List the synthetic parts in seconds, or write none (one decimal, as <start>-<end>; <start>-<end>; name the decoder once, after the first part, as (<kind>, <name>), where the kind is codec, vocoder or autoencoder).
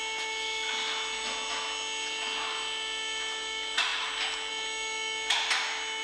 none